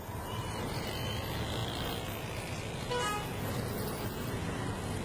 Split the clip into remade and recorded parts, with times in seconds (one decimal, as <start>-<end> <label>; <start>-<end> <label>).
0.0-5.0 recorded